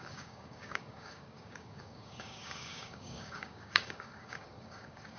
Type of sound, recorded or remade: remade